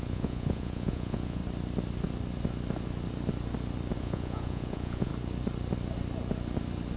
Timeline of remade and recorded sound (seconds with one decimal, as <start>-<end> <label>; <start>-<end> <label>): 0.0-1.4 remade; 1.4-4.0 recorded; 4.0-5.1 remade; 5.1-7.0 recorded